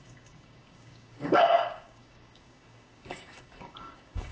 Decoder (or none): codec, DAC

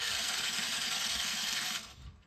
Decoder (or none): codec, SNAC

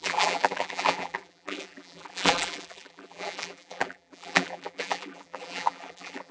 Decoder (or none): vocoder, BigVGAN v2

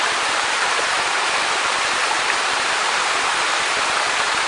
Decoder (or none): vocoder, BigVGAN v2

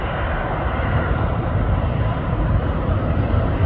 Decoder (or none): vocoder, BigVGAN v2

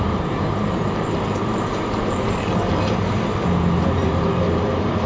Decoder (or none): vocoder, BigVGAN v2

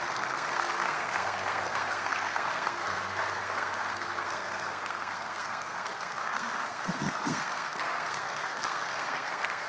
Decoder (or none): codec, SNAC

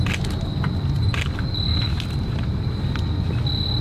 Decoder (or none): none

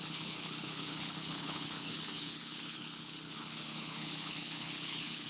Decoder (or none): codec, HILCodec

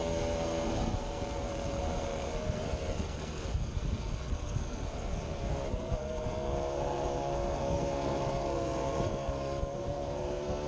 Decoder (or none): codec, SNAC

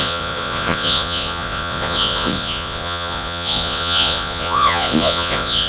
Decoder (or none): vocoder, Vocos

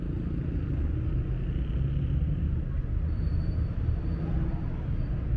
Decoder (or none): none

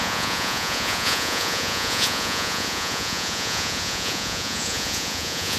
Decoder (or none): vocoder, Vocos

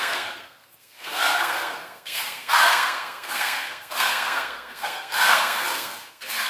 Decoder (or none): codec, SNAC